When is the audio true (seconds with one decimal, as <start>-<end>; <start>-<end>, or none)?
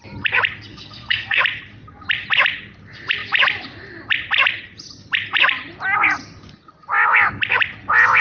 0.0-0.7; 1.4-8.2